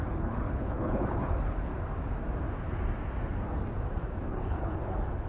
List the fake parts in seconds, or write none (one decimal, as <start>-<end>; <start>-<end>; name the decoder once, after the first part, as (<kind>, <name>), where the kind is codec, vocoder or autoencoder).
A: 0.0-1.7 (codec, HILCodec); 4.3-5.3